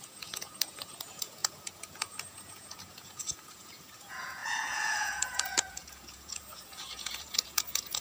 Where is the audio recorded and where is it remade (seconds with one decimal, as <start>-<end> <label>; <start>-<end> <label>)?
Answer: 0.0-8.0 remade